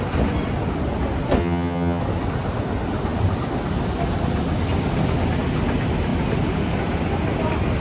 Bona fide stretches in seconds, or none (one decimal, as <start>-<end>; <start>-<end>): 0.0-1.4; 2.0-7.8